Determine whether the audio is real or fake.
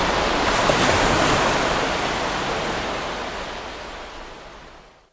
real